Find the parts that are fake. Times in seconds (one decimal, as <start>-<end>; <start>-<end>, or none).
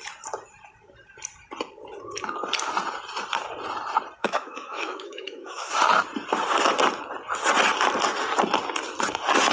4.2-5.7